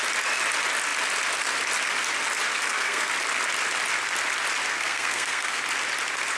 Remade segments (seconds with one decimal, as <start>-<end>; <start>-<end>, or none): 2.5-3.1; 4.7-5.6